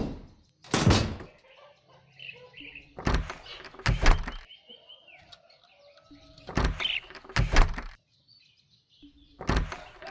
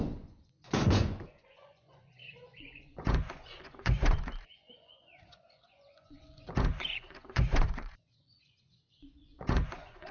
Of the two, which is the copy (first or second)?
second